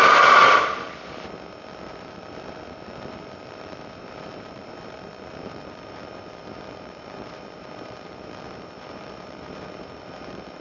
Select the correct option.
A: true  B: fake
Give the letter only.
B